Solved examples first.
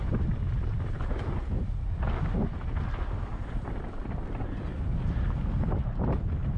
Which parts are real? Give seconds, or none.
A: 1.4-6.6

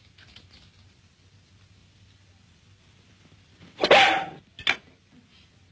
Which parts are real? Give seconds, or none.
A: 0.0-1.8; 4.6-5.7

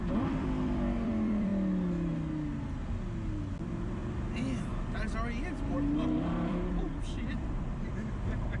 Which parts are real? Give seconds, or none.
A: 1.5-3.6; 4.0-6.5

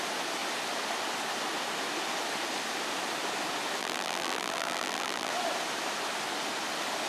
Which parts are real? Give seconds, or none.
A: 0.0-3.8; 5.3-7.1